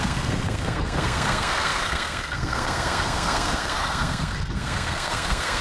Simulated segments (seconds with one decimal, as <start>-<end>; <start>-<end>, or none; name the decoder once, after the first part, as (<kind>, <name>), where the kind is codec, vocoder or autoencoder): 0.0-5.6 (codec, SNAC)